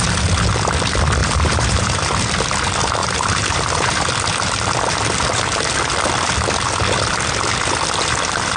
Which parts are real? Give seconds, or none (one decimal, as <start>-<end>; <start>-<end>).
0.0-1.2; 2.0-3.0; 4.1-8.6

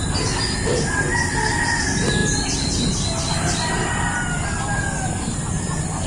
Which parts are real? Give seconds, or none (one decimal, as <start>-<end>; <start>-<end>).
0.0-6.1

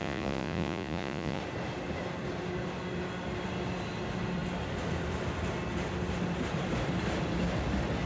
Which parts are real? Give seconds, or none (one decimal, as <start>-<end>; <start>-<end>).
1.4-8.1